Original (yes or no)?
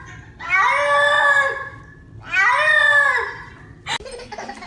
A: yes